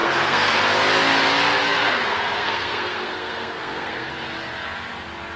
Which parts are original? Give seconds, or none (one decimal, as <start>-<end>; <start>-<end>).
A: 0.6-1.6; 4.1-5.4